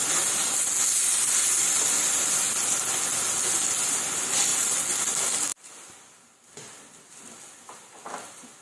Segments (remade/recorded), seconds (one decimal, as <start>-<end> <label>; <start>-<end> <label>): 0.0-8.6 recorded